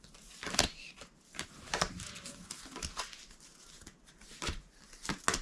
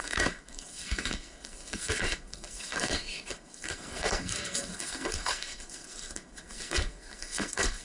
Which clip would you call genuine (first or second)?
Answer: first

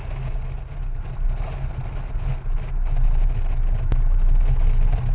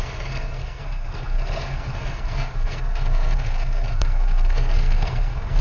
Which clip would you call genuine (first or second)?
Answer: first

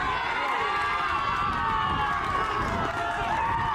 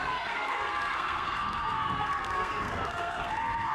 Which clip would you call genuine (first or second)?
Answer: first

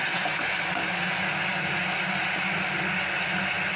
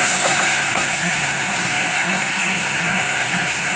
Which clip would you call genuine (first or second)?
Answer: first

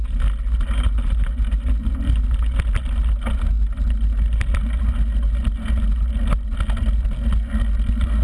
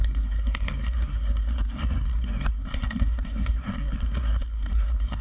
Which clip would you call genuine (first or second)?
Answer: first